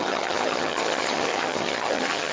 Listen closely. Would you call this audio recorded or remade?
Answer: remade